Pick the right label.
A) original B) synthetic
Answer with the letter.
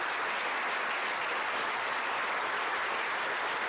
A